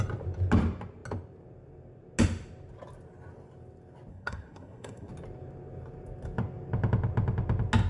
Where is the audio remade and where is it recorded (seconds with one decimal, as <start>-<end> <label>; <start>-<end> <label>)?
0.0-4.1 recorded; 4.1-5.1 remade; 5.1-7.9 recorded